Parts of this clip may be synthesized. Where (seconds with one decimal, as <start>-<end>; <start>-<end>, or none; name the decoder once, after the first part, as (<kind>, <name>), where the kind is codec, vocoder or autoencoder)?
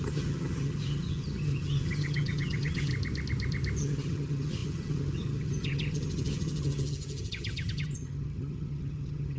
0.0-2.9 (vocoder, HiFi-GAN); 3.8-9.4